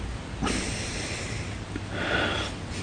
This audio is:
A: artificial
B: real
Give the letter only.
B